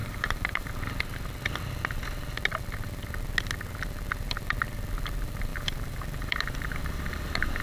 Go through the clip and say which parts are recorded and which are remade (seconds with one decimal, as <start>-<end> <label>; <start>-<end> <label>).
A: 0.0-0.7 remade; 0.7-5.5 recorded; 5.5-7.6 remade

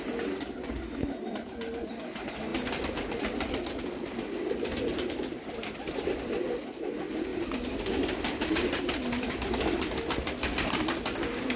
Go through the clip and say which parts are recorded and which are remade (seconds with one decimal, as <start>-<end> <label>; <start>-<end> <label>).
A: 0.0-11.6 recorded

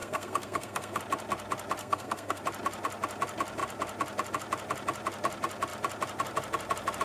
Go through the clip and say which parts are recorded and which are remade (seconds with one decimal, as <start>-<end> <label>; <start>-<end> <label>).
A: 0.0-1.0 remade; 1.0-1.8 recorded; 1.8-2.4 remade; 2.4-7.0 recorded

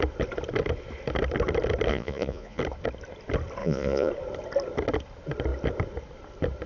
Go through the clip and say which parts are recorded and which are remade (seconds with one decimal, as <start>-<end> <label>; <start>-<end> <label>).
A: 0.0-1.9 recorded; 1.9-2.6 remade; 2.6-3.6 recorded; 3.6-4.1 remade; 4.1-6.7 recorded

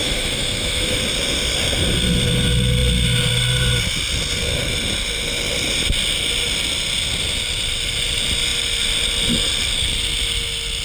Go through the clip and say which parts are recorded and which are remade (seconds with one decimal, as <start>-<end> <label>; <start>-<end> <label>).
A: 0.0-1.0 remade; 1.0-10.8 recorded

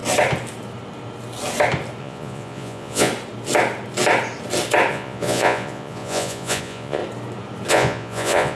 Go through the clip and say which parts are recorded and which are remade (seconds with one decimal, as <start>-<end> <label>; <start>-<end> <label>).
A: 0.0-2.0 recorded; 2.0-3.1 remade; 3.1-4.9 recorded; 4.9-7.0 remade; 7.0-7.7 recorded; 7.7-8.6 remade